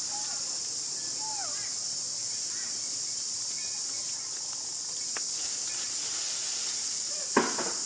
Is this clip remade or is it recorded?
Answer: recorded